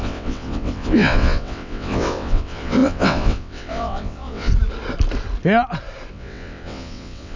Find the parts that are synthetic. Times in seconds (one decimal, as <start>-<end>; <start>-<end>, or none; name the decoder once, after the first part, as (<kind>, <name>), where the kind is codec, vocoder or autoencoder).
0.0-4.5 (vocoder, WaveNeXt); 6.1-7.4